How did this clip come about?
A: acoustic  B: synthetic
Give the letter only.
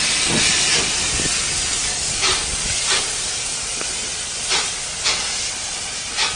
A